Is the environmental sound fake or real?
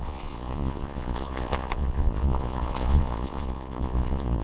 fake